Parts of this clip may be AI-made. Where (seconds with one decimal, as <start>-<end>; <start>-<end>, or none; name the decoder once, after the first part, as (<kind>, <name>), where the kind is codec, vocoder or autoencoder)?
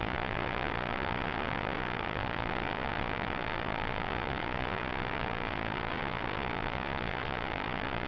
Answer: 0.0-8.1 (vocoder, Vocos)